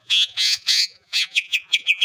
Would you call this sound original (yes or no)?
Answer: no